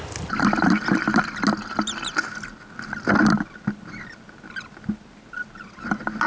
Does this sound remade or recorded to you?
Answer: recorded